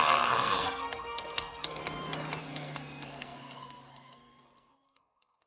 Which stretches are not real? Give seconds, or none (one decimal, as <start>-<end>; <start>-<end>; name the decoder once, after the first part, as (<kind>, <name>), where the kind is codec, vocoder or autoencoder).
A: 0.0-1.8 (codec, SNAC); 2.4-5.5